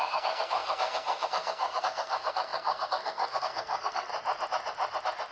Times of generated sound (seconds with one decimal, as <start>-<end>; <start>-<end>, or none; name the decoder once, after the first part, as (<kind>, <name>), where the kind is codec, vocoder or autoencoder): 0.0-4.1 (codec, SNAC)